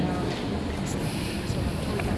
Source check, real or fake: real